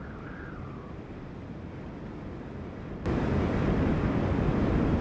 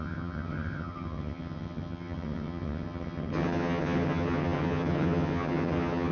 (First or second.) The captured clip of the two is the first